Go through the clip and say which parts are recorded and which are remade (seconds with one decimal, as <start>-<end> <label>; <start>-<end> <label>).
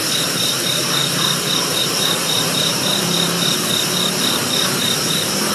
0.0-1.0 remade; 1.0-1.8 recorded; 1.8-2.9 remade; 2.9-4.8 recorded; 4.8-5.5 remade